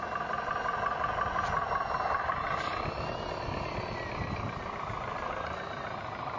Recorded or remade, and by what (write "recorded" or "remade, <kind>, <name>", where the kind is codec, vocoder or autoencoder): recorded